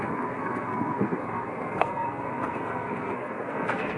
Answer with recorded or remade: remade